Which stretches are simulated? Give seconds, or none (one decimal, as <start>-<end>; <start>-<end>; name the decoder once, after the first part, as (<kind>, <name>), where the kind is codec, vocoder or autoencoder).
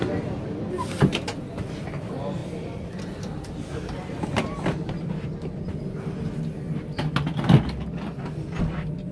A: none